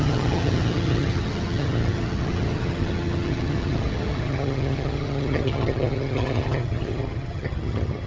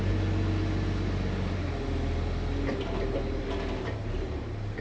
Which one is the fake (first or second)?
first